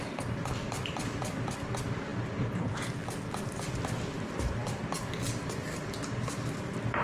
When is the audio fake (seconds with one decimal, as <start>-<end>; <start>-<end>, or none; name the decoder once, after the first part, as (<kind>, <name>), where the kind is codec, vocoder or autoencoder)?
0.0-2.1 (vocoder, BigVGAN v2); 3.4-7.0